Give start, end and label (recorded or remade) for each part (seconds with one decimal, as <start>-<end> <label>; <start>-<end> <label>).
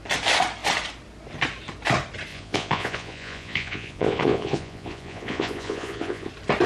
0.0-2.3 recorded; 2.3-6.3 remade; 6.3-6.7 recorded